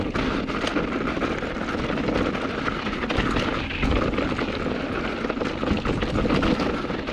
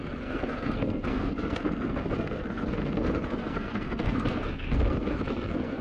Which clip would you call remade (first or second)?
second